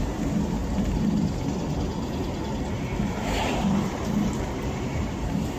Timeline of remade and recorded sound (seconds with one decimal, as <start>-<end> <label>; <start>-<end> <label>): 0.0-5.6 recorded